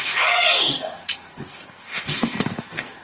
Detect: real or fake fake